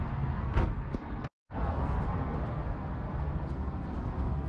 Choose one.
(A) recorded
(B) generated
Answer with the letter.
B